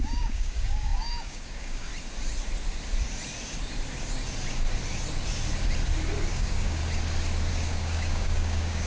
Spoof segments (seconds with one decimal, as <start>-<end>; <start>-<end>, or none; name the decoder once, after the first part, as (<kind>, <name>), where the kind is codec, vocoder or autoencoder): 0.0-1.9 (codec, DAC); 6.3-6.8; 7.5-8.9